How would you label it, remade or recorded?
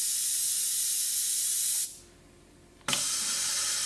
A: recorded